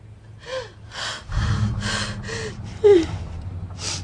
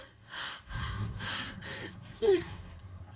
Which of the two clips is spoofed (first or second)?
second